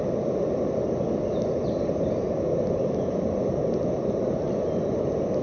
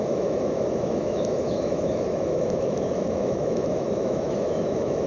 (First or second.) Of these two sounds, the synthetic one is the second